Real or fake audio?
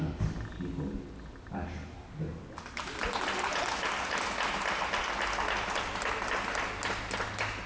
real